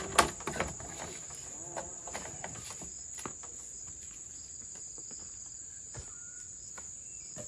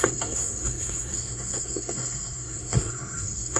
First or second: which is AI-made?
second